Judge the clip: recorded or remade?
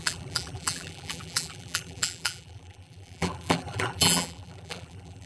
remade